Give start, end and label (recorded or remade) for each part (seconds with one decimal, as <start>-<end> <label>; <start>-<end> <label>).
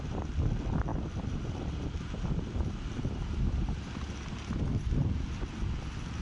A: 0.0-6.2 recorded